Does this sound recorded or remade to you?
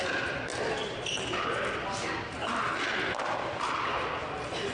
recorded